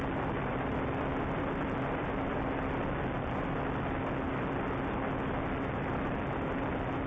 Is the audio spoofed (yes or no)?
no